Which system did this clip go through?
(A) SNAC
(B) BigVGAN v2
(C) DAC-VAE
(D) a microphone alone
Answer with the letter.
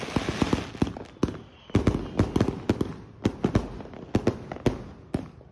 D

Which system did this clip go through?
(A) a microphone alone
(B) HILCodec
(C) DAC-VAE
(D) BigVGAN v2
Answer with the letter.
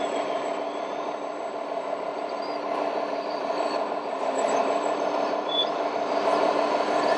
D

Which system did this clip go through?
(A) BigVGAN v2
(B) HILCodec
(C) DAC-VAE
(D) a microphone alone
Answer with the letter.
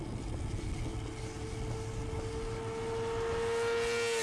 D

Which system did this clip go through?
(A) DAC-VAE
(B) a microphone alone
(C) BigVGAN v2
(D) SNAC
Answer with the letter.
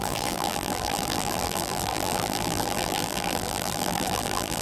C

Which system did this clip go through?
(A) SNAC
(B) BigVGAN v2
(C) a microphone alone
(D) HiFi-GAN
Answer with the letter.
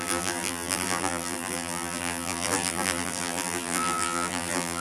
B